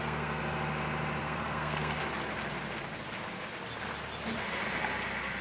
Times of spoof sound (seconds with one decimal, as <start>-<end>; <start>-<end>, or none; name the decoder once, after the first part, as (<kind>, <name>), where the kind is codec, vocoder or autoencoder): 0.0-0.4 (codec, SNAC); 1.2-2.0